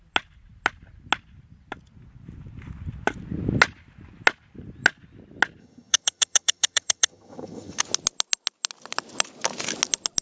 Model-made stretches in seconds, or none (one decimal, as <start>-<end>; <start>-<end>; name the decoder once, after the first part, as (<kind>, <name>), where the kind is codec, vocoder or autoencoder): 5.6-7.8 (vocoder, HiFi-GAN)

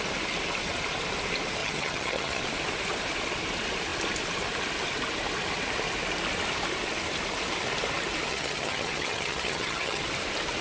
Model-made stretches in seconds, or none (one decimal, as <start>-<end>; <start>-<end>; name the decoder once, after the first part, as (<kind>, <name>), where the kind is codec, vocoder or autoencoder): 1.6-2.4 (vocoder, HiFi-GAN); 8.3-10.0